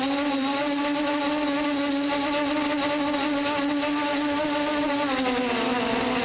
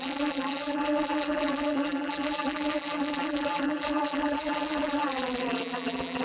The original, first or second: first